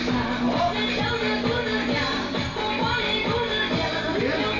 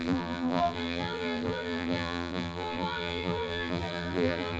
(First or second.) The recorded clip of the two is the first